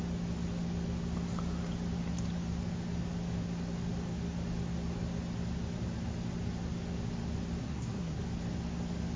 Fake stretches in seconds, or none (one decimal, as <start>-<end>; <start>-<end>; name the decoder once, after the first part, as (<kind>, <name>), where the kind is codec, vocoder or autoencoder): 7.6-8.2 (codec, SNAC)